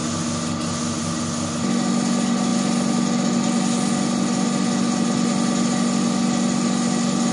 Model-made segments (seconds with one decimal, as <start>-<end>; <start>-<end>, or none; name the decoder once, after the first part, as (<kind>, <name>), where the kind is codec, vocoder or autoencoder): none